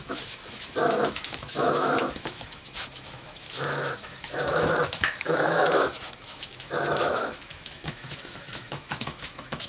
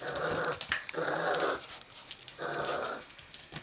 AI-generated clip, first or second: first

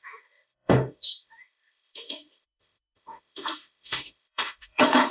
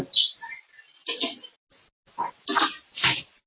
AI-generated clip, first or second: first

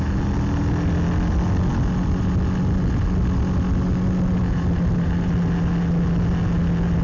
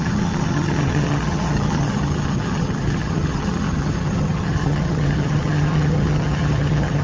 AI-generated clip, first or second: second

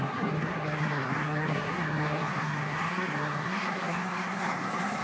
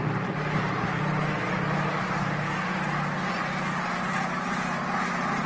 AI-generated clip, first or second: first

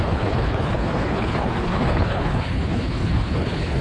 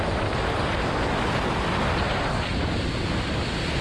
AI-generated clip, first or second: first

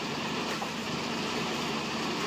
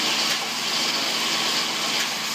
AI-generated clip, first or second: first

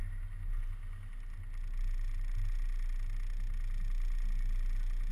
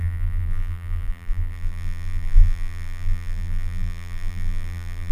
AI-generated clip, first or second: second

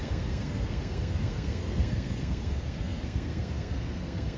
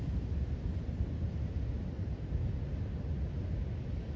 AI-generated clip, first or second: first